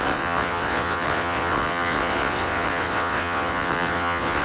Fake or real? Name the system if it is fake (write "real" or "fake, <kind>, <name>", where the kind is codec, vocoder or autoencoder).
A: fake, vocoder, WaveNeXt